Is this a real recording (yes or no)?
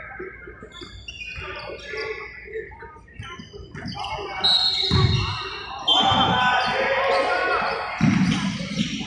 yes